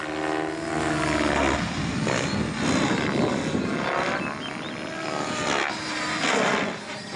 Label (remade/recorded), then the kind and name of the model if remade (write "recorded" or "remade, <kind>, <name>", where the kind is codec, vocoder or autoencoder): recorded